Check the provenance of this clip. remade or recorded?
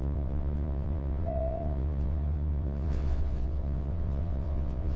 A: remade